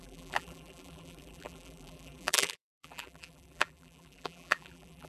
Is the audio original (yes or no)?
no